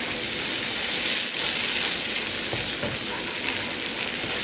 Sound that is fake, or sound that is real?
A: real